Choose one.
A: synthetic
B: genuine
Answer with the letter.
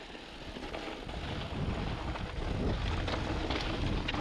B